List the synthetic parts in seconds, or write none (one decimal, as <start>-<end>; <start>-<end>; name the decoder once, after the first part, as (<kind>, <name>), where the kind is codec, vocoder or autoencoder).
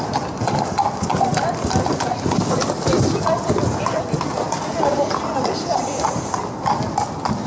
none